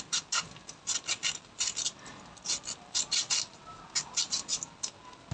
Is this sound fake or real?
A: real